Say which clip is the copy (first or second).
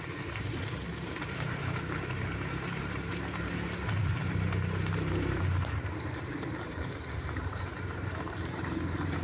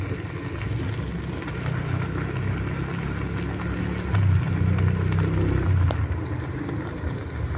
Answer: first